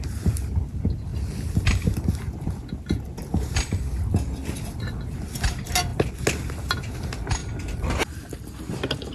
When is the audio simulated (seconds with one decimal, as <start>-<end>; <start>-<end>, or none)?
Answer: none